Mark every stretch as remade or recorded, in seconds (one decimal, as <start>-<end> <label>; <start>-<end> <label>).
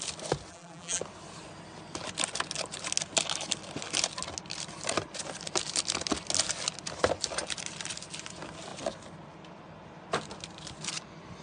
0.0-0.5 recorded; 0.5-1.0 remade; 1.0-11.4 recorded